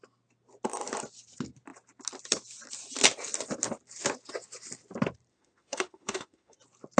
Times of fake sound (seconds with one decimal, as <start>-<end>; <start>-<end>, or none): 5.3-6.6